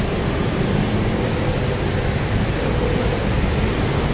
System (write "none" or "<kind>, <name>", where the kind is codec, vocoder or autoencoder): none